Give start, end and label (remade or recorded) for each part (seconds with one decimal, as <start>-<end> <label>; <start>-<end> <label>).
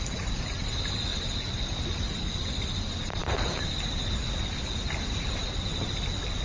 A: 0.0-1.1 remade; 1.1-1.8 recorded; 1.8-6.4 remade